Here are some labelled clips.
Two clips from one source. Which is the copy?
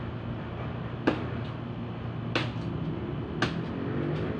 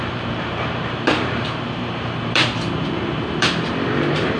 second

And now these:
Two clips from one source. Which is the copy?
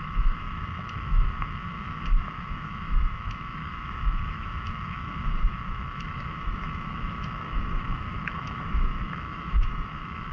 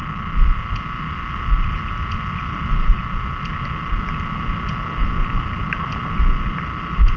first